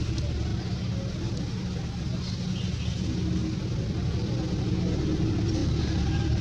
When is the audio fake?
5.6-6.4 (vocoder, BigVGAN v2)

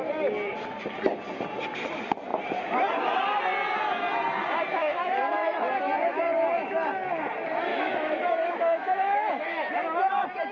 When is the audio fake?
4.7-5.7 (autoencoder, DAC-VAE); 7.7-10.1